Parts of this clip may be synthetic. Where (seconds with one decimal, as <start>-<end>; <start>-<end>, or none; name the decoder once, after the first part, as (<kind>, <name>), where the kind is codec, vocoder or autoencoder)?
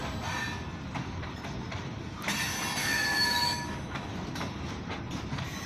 2.8-4.1 (autoencoder, DAC-VAE)